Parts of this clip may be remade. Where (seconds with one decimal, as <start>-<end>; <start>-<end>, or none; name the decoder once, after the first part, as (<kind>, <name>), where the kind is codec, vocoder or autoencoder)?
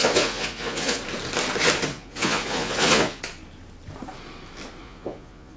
0.0-1.0 (vocoder, Vocos); 1.9-3.2; 4.8-5.6